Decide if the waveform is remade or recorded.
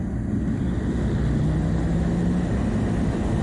recorded